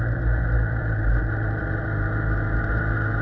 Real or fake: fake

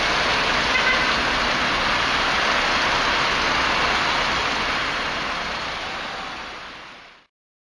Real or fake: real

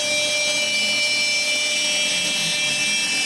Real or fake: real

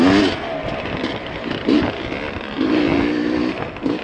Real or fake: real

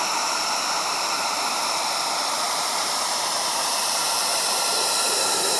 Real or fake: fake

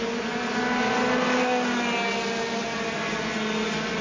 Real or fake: real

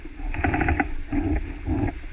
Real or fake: real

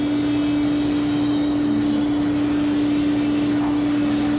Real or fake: real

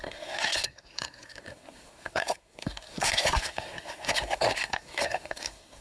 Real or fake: fake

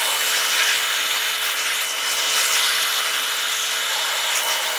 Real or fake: real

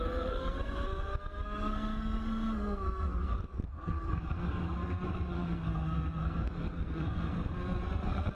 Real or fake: fake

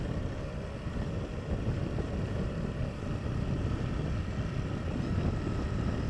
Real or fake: real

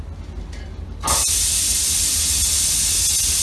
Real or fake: real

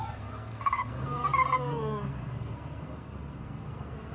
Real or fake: fake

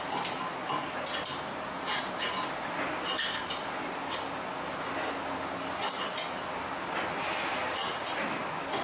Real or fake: real